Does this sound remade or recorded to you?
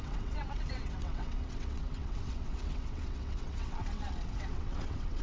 remade